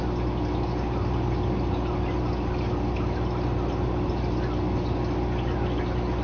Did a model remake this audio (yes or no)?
no